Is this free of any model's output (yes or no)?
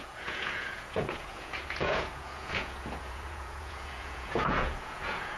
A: no